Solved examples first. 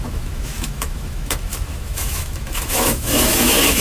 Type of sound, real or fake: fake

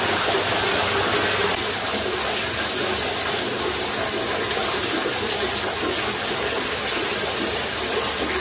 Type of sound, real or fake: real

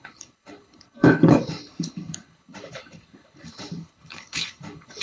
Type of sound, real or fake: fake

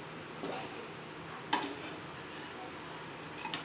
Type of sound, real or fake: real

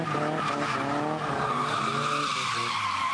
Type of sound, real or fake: real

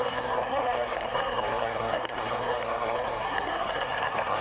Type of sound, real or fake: fake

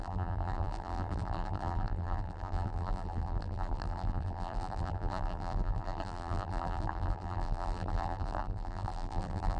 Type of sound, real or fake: fake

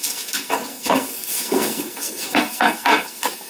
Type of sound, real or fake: fake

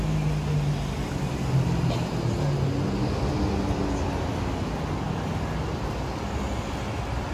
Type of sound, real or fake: real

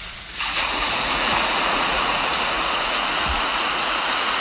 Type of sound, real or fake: fake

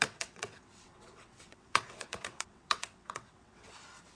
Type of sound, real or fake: fake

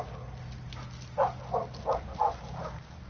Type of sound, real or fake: real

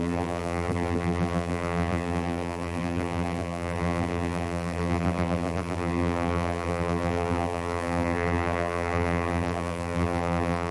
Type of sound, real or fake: fake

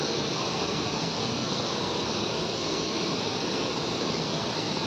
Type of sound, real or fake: fake